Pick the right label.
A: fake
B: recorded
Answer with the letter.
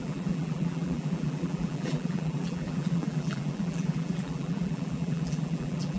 A